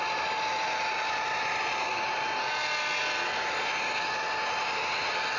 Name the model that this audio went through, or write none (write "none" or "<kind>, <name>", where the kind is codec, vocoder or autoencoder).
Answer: none